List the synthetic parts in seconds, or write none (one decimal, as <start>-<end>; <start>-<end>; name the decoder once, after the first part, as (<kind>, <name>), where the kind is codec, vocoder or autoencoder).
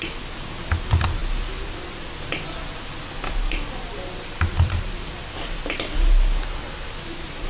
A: none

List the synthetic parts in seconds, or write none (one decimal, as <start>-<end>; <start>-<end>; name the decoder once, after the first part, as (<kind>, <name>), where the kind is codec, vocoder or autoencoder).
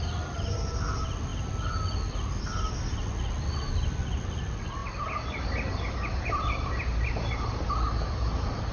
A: none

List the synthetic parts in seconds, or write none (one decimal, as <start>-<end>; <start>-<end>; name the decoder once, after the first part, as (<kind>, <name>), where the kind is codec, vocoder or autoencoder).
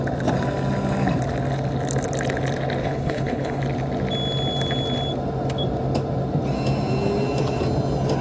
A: 2.8-3.6 (codec, HILCodec)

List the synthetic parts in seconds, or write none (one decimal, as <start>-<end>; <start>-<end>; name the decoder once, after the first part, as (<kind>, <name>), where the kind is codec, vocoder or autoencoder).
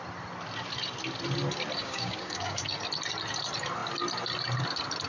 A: 1.8-2.6 (codec, DAC)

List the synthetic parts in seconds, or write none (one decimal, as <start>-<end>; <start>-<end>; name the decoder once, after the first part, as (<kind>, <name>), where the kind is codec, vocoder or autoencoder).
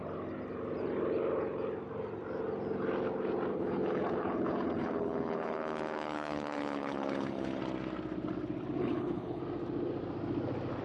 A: 3.5-7.6 (codec, HILCodec); 8.8-9.4